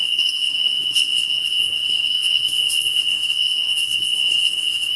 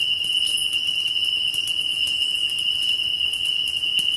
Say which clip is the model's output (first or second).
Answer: first